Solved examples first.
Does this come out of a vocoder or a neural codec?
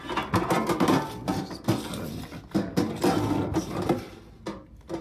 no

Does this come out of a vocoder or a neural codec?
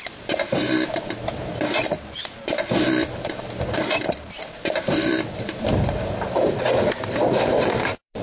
yes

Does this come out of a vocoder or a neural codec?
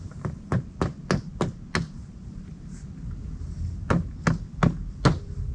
no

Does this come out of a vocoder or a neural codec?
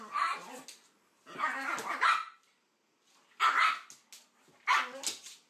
no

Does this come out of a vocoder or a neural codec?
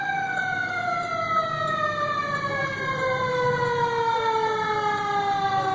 no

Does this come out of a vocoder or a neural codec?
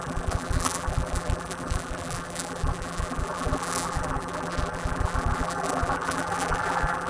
yes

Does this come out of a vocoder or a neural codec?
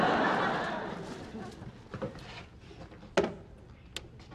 no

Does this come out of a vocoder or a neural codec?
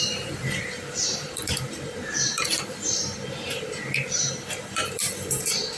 yes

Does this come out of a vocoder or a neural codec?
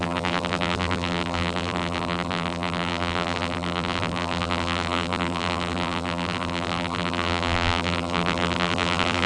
yes